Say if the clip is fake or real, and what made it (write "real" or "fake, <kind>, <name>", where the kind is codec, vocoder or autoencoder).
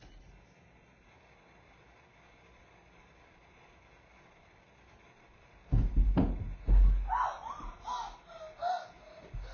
real